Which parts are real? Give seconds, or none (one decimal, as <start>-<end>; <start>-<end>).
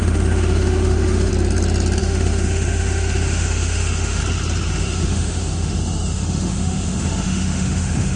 1.3-2.0; 4.2-4.7